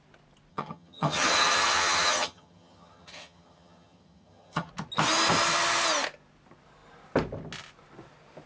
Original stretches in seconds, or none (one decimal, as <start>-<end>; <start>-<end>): 0.0-0.5; 4.7-8.5